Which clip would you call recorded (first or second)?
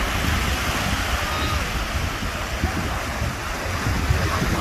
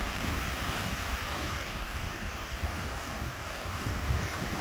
first